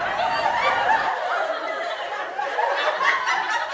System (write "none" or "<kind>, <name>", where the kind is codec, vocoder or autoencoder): none